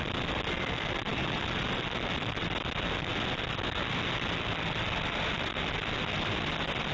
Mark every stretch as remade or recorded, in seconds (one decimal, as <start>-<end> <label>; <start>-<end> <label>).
0.0-6.9 recorded